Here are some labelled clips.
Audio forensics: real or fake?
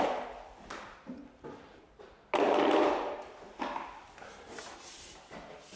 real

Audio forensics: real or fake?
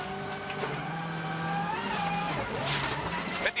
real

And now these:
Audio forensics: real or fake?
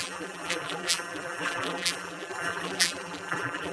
fake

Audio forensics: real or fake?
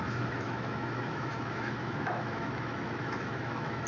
fake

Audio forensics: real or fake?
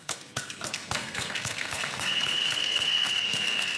fake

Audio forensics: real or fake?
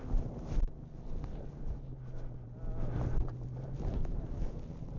real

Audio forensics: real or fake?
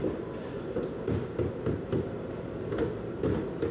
real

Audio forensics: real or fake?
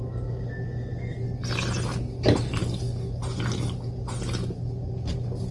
real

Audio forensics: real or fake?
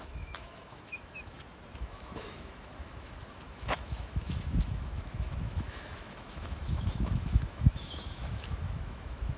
fake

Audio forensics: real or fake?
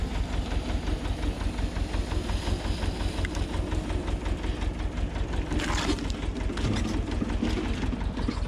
real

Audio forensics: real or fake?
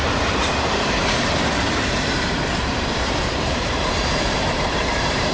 fake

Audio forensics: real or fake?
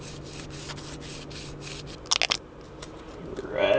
real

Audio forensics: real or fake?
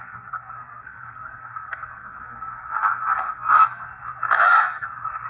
fake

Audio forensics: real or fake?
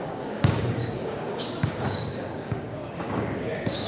fake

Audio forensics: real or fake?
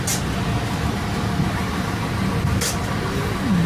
real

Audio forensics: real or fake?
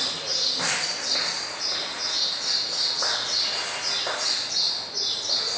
real